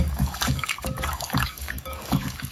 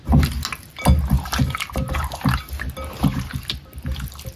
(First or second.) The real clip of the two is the second